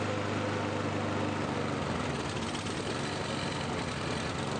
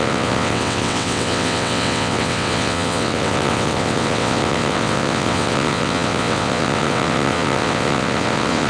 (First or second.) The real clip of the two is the first